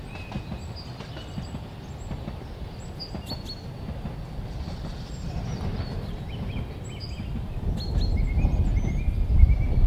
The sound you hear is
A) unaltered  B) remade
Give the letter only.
A